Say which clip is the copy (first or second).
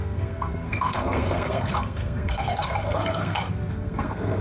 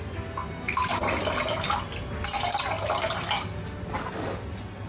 first